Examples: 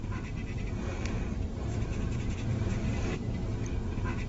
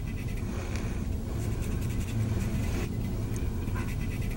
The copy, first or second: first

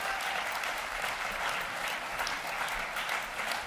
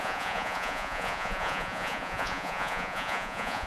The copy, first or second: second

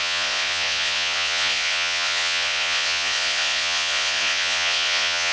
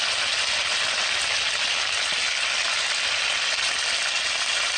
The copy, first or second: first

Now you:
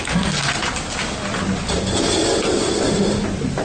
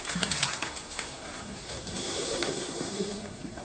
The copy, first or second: second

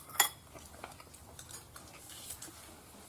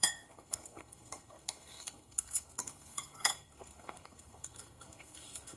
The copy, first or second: second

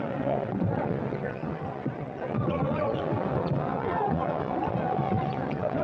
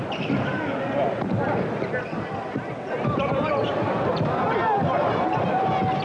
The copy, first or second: first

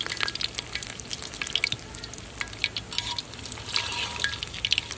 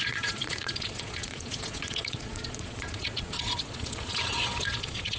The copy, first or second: second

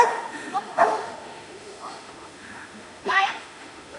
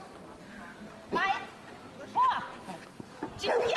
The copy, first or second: first